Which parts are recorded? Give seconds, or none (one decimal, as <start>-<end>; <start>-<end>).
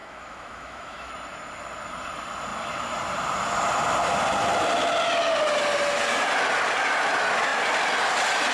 1.1-8.5